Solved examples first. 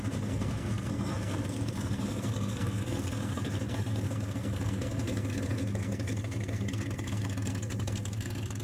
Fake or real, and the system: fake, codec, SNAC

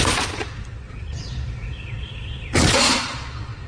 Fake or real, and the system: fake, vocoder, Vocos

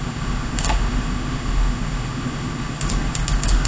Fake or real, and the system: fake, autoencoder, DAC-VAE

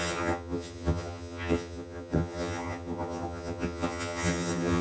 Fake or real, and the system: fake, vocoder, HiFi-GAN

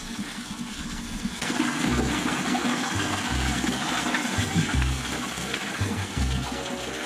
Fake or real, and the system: fake, codec, SNAC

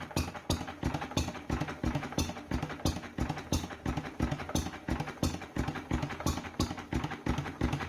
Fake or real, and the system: real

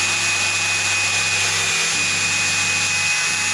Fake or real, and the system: real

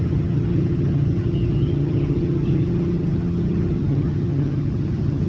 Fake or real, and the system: fake, vocoder, HiFi-GAN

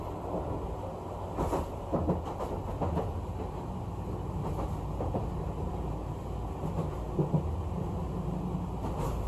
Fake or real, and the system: real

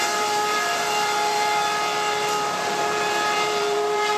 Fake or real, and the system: fake, vocoder, BigVGAN v2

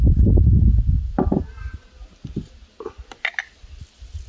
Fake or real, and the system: real